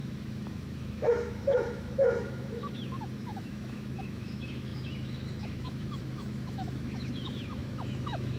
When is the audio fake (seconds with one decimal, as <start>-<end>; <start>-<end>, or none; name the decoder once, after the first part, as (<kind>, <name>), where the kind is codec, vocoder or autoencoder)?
0.0-8.4 (autoencoder, DAC-VAE)